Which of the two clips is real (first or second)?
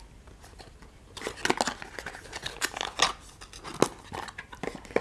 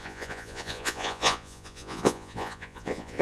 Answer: first